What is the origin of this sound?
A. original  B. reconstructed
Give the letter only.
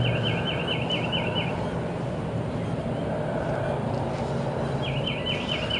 A